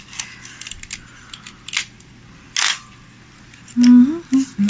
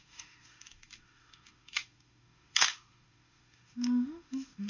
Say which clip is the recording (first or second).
first